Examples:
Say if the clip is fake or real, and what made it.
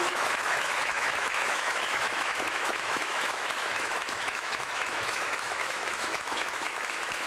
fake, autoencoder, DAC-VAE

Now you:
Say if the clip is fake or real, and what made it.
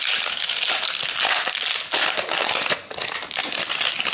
real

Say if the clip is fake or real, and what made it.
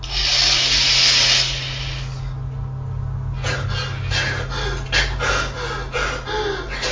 real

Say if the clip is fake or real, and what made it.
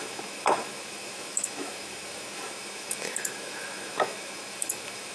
fake, autoencoder, DAC-VAE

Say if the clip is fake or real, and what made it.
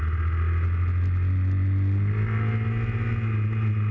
real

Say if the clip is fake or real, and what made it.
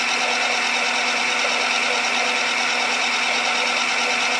real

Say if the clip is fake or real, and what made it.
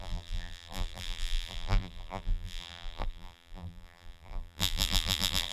fake, vocoder, BigVGAN v2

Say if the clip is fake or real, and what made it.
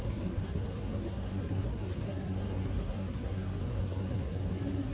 fake, codec, SNAC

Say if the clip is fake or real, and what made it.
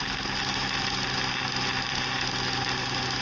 real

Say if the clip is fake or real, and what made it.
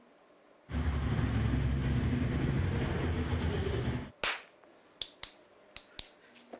real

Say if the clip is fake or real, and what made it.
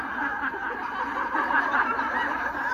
fake, vocoder, BigVGAN v2